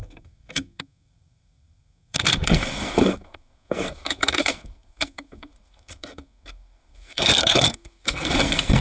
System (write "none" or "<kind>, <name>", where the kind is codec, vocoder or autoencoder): codec, SNAC